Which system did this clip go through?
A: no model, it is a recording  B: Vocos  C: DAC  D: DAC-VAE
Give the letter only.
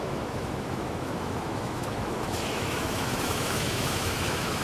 D